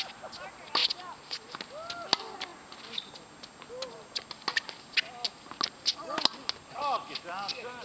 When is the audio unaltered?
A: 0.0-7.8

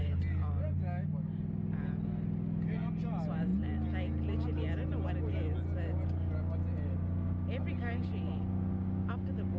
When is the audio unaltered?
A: 0.0-9.6

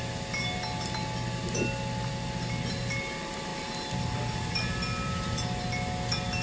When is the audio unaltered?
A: 0.0-6.4

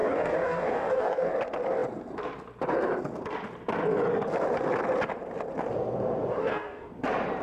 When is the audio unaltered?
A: 1.3-6.3; 6.9-7.4

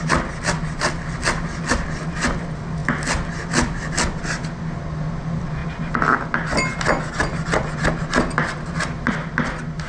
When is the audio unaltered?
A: 0.0-9.9

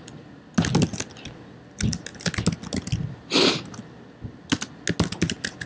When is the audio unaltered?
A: 0.0-5.7

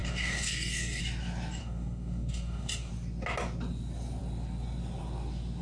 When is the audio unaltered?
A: 1.0-1.6; 2.9-5.6

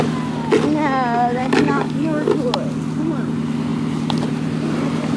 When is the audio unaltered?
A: 0.0-1.4; 2.3-5.2